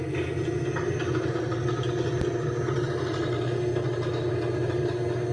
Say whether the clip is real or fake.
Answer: real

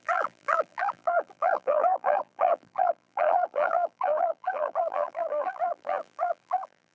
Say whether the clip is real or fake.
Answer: fake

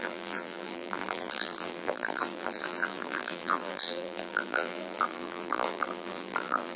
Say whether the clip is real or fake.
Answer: fake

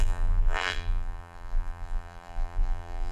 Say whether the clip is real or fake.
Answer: fake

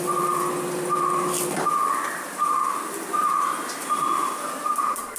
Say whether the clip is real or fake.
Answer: fake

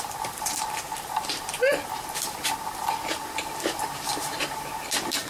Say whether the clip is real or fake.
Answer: fake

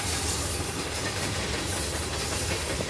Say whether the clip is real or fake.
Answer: fake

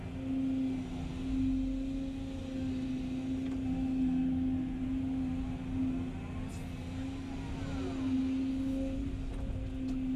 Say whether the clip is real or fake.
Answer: real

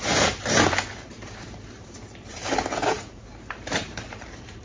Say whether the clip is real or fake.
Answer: fake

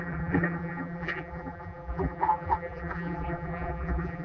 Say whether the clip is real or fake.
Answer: fake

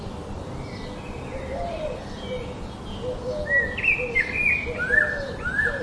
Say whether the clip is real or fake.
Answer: real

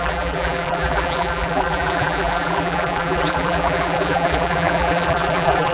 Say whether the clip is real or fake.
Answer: fake